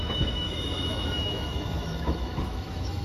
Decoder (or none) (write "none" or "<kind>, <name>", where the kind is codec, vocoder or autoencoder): autoencoder, DAC-VAE